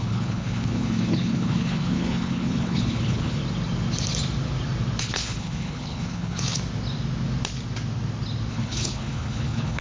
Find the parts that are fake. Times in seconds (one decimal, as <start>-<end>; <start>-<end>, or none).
0.0-3.4; 5.0-6.6; 8.5-9.8